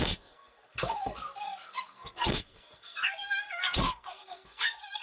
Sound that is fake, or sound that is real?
fake